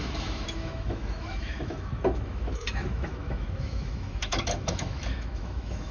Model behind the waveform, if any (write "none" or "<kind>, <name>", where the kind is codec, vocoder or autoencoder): autoencoder, DAC-VAE